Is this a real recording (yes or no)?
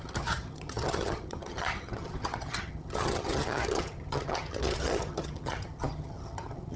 no